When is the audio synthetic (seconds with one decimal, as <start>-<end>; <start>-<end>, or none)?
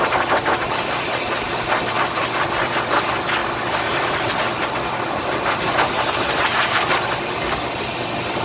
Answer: none